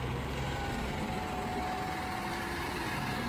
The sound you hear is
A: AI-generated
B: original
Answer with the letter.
B